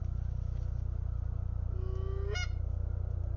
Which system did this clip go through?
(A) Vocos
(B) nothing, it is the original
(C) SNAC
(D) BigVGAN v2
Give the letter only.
B